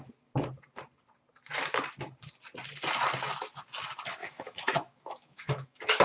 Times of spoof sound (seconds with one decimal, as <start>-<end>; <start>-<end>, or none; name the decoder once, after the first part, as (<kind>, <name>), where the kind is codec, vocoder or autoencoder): 4.2-6.0 (autoencoder, DAC-VAE)